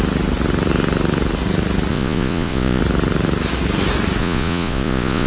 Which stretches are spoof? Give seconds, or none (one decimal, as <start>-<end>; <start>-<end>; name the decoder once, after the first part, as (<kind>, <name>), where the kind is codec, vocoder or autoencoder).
1.9-2.8 (vocoder, Vocos); 4.2-5.3